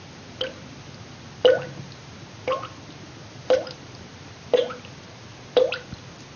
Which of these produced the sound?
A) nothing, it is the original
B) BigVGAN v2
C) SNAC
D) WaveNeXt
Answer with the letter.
A